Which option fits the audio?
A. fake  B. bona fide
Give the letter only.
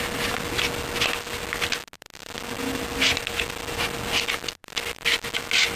B